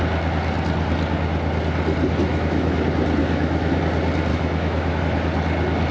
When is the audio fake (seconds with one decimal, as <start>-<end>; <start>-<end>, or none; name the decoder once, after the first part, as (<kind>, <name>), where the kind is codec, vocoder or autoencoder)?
2.2-2.8 (autoencoder, DAC-VAE); 3.2-3.8; 4.3-5.0